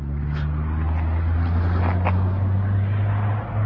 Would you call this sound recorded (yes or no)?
yes